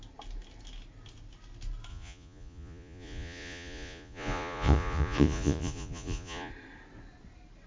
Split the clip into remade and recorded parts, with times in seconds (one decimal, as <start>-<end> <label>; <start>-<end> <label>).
0.0-1.9 recorded; 1.9-6.5 remade; 6.5-7.7 recorded